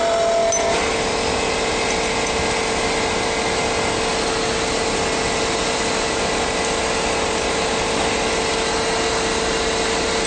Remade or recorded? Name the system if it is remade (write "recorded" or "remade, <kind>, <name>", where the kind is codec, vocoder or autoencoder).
recorded